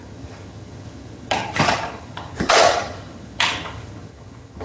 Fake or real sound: fake